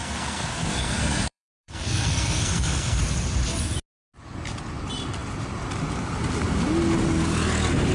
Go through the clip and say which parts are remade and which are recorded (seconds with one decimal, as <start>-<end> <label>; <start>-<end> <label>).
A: 0.0-3.0 remade; 3.0-7.9 recorded